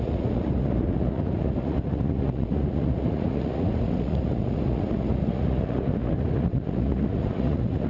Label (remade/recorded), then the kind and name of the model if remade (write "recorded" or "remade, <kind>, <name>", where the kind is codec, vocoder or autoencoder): remade, vocoder, Vocos